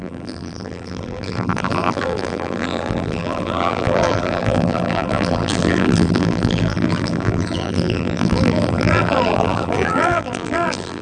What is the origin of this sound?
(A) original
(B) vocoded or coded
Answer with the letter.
B